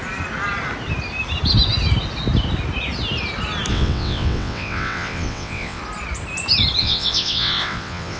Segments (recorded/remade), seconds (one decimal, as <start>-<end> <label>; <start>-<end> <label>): 0.0-3.7 recorded; 3.7-5.8 remade; 5.8-6.8 recorded; 6.8-8.2 remade

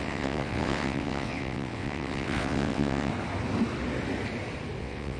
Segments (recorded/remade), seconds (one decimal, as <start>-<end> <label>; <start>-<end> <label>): 0.0-3.1 remade; 3.1-4.8 recorded; 4.8-5.2 remade

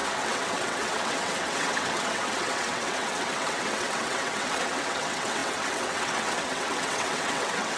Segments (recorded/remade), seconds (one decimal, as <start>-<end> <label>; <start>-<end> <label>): 0.0-7.8 remade

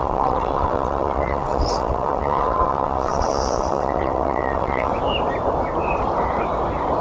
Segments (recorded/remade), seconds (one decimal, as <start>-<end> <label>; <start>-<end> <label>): 0.0-4.9 remade; 4.9-7.0 recorded

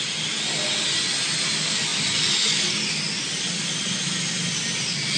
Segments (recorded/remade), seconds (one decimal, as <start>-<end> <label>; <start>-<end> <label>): 0.0-5.2 recorded

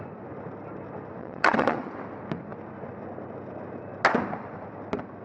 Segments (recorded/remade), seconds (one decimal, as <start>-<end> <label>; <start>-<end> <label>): 0.0-1.2 recorded; 1.2-1.9 remade; 1.9-5.2 recorded

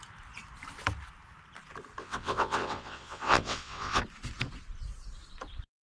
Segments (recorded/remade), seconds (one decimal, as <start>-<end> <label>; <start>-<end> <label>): 0.0-2.0 recorded; 2.0-4.0 remade; 4.0-5.8 recorded